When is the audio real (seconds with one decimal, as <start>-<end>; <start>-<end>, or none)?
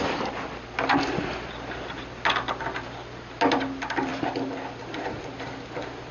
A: 0.0-6.1